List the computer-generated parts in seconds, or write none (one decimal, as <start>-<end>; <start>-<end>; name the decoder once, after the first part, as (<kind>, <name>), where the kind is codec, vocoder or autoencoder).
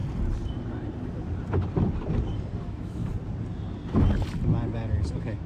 2.6-3.0 (autoencoder, DAC-VAE); 5.1-5.5